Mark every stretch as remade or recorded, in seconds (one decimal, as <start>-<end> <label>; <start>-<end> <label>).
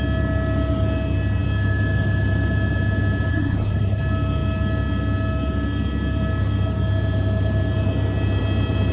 0.0-3.3 recorded; 3.3-4.0 remade; 4.0-8.9 recorded